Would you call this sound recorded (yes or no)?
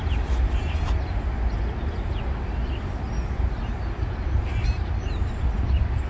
yes